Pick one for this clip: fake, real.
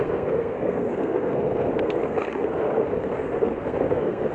fake